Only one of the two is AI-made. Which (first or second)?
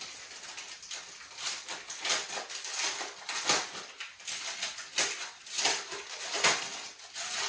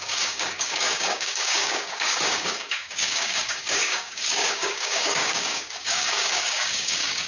second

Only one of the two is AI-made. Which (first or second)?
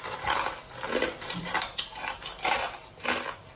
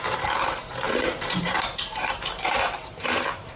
second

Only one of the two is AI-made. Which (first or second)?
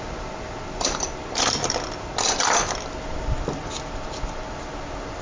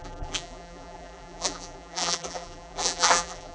second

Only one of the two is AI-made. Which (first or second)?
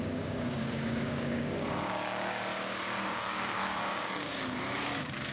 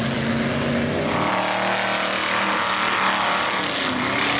first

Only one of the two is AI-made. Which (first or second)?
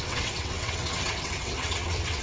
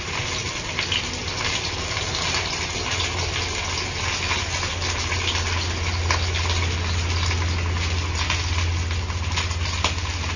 first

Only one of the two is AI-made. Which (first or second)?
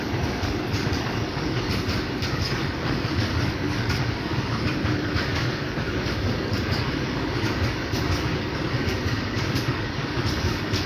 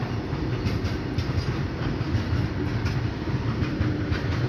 first